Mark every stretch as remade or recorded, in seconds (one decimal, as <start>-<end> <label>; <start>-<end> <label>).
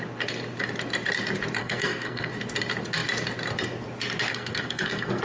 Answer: 0.0-1.6 recorded; 1.6-2.3 remade; 2.3-4.3 recorded; 4.3-5.2 remade